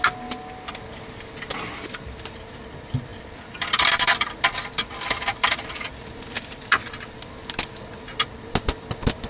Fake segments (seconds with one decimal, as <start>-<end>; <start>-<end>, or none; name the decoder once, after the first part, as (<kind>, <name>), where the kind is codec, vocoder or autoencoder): 3.1-6.8 (vocoder, BigVGAN v2)